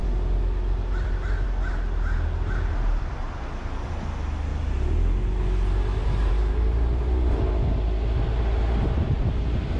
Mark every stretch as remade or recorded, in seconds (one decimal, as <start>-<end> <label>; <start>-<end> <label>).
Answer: 0.0-9.8 recorded

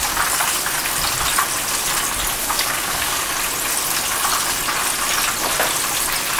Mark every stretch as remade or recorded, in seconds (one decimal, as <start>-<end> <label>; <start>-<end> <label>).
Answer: 0.0-2.4 recorded; 2.4-3.3 remade; 3.3-6.4 recorded

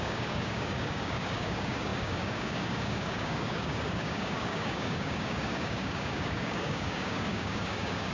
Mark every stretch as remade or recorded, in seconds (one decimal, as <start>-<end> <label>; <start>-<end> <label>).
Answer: 0.0-8.1 remade

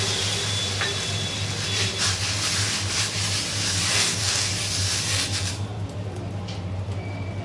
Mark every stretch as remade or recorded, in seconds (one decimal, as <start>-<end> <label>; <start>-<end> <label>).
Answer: 0.0-3.9 recorded; 3.9-4.5 remade; 4.5-7.4 recorded

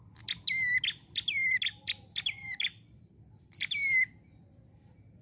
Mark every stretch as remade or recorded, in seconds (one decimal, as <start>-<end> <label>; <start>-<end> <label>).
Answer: 0.0-5.2 recorded

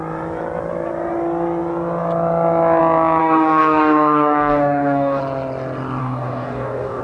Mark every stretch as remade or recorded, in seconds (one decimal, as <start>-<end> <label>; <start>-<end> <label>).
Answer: 0.0-3.2 recorded; 3.2-5.2 remade; 5.2-6.0 recorded; 6.0-7.0 remade